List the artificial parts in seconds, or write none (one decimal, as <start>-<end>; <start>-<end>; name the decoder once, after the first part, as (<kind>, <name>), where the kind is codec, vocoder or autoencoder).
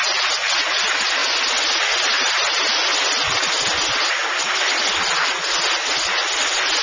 none